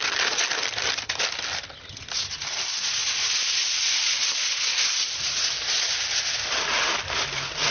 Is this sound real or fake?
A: real